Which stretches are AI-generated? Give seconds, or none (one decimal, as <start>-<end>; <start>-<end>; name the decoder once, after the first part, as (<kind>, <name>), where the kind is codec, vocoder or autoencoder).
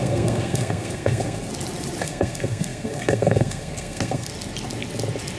0.0-1.5 (codec, SNAC); 2.0-4.3